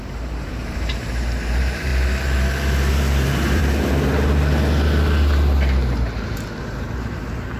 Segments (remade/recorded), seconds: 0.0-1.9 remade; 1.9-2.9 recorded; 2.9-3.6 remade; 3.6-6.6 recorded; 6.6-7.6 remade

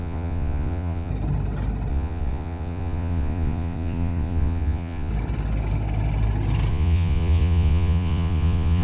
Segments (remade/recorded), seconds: 0.0-1.1 remade; 1.1-1.9 recorded; 1.9-5.1 remade; 5.1-6.7 recorded; 6.7-8.8 remade

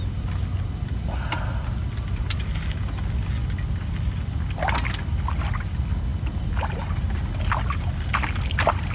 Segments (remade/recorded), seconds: 0.0-8.9 recorded

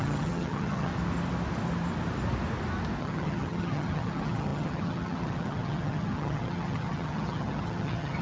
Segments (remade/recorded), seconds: 0.0-0.9 remade; 0.9-3.0 recorded; 3.0-8.2 remade

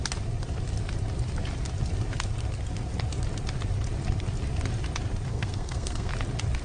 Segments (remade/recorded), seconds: 0.0-5.3 recorded; 5.3-6.1 remade; 6.1-6.6 recorded

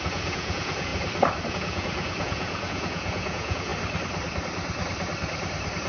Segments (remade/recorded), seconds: 0.0-0.9 remade; 0.9-1.5 recorded; 1.5-3.7 remade; 3.7-5.9 recorded

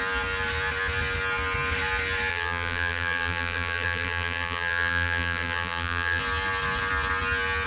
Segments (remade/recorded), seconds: 0.0-2.3 recorded; 2.3-6.2 remade; 6.2-7.7 recorded

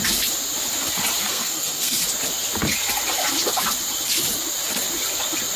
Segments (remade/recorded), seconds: 0.0-1.2 recorded; 1.2-2.0 remade; 2.0-5.6 recorded